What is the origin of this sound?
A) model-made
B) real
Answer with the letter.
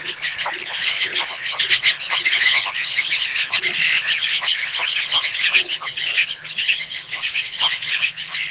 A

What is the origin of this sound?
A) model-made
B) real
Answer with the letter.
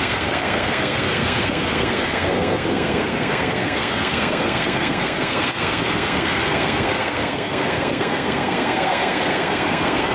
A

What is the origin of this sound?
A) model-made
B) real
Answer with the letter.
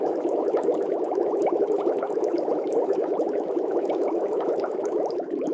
A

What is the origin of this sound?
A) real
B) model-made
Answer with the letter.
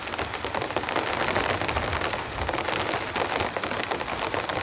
A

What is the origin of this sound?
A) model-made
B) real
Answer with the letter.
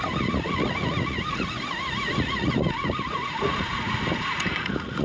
A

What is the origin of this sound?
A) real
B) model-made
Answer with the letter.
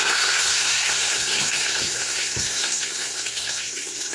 B